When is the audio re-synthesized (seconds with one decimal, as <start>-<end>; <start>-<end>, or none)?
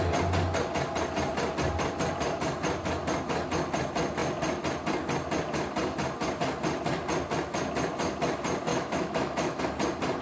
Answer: 8.7-9.6